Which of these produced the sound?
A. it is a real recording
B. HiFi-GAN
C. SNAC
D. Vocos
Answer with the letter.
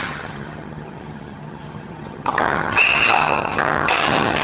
B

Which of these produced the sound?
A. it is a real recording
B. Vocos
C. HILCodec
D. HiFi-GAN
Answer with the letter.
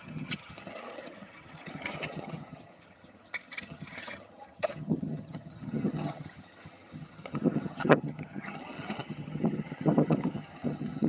D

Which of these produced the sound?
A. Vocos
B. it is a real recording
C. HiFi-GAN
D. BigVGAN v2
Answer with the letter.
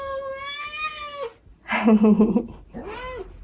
B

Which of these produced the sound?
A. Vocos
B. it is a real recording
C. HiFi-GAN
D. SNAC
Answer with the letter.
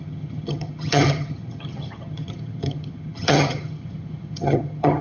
C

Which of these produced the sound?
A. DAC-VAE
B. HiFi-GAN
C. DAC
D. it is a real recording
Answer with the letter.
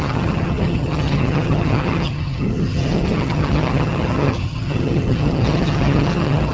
B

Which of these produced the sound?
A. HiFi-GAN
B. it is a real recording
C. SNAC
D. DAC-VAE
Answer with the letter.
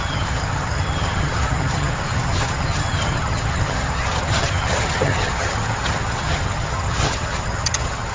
A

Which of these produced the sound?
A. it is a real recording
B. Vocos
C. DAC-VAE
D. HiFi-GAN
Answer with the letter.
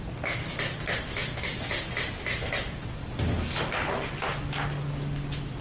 A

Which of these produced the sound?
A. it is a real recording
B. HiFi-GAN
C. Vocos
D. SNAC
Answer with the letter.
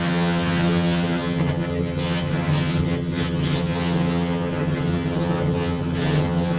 B